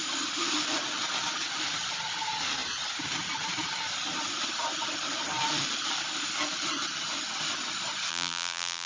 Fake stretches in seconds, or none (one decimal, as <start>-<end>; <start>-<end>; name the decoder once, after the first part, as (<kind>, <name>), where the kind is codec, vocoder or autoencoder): 8.1-8.9 (vocoder, BigVGAN v2)